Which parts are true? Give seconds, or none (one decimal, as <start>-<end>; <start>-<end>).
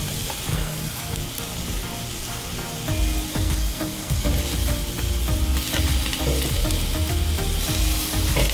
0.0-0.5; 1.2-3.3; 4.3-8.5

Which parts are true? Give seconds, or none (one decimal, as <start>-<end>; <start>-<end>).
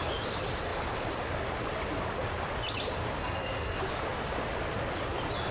0.0-3.2; 3.8-5.5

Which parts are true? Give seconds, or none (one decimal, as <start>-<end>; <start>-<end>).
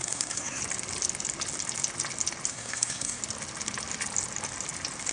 0.6-2.5; 3.2-5.1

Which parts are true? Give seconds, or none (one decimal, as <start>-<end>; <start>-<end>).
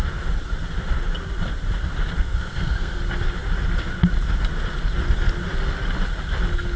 0.0-2.2; 3.0-6.8